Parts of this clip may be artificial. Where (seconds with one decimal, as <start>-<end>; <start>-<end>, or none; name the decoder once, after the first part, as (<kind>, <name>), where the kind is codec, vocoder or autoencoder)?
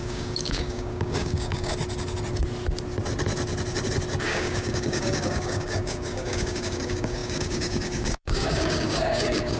0.0-1.7 (codec, DAC); 4.2-9.6